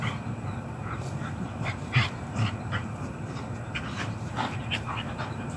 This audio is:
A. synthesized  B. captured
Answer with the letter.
A